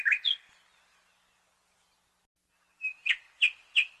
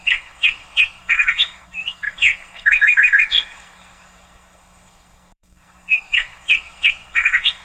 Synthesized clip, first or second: second